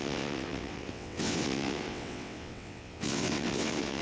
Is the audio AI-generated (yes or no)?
yes